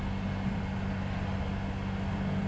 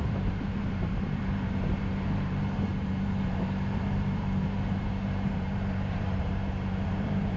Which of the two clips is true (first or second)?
first